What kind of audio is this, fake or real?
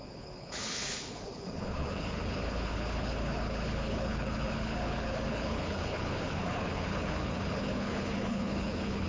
fake